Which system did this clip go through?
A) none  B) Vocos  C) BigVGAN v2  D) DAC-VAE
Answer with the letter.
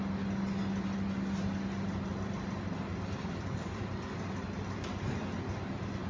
A